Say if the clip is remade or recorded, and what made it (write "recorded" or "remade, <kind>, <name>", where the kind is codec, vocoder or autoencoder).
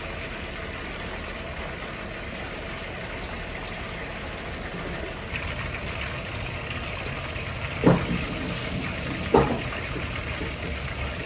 recorded